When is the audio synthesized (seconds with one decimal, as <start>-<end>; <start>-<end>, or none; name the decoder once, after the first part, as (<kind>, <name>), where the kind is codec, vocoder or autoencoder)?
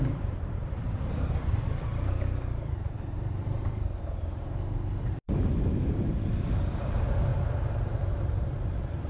0.0-7.3 (vocoder, BigVGAN v2)